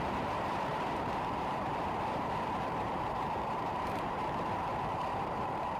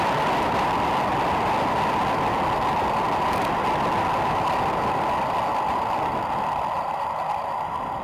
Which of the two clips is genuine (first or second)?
second